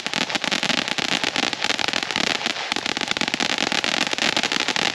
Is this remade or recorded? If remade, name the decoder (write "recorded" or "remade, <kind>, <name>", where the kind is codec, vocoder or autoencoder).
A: recorded